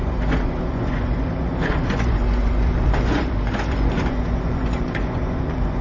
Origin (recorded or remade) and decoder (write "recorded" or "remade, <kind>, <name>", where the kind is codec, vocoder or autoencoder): remade, vocoder, Vocos